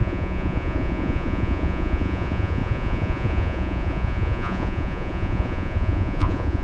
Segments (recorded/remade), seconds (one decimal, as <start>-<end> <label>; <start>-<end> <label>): 0.0-6.6 remade